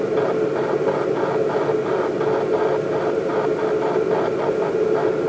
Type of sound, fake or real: real